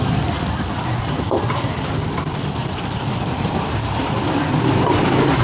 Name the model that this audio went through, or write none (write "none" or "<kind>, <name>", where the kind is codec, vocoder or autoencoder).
vocoder, BigVGAN v2